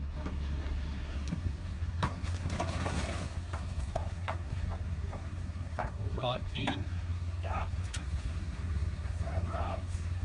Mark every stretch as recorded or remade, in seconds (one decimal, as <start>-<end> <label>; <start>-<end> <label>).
0.0-10.2 remade